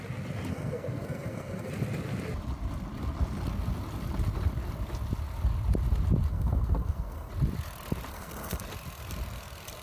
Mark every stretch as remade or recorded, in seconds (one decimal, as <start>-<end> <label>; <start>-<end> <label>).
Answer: 0.0-0.5 recorded; 0.5-1.7 remade; 1.7-6.3 recorded; 6.3-7.3 remade; 7.3-8.1 recorded; 8.1-8.6 remade; 8.6-9.8 recorded